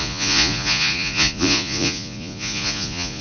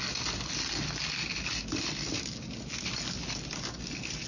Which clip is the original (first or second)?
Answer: second